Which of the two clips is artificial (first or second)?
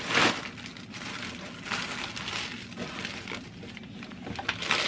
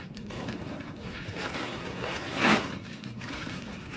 second